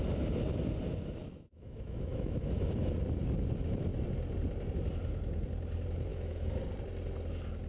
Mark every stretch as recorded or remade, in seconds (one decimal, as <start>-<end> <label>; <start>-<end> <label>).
0.0-1.2 recorded; 1.2-2.9 remade; 2.9-6.1 recorded; 6.1-6.6 remade; 6.6-7.7 recorded